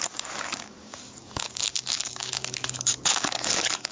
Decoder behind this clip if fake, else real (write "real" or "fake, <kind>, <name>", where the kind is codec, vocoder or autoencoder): fake, codec, DAC